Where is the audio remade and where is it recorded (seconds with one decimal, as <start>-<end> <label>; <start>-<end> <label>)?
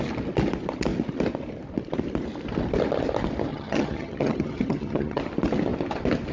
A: 0.0-3.5 recorded; 3.5-5.2 remade; 5.2-6.3 recorded